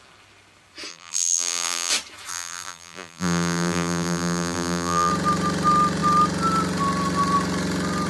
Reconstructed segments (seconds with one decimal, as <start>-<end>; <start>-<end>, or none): 0.9-1.9; 2.3-5.1